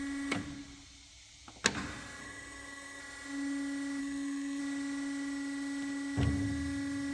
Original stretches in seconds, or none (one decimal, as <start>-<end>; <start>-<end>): 0.0-2.2; 3.0-4.0; 4.6-7.1